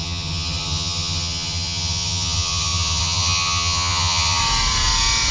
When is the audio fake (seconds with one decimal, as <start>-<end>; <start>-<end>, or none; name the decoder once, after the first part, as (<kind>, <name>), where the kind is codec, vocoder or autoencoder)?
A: 0.0-4.4 (vocoder, HiFi-GAN)